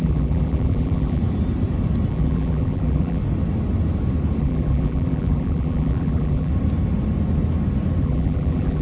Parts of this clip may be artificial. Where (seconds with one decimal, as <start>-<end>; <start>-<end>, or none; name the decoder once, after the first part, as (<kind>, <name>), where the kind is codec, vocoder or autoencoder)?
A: 0.0-1.2 (vocoder, BigVGAN v2); 2.1-3.2; 4.4-6.5; 8.0-8.8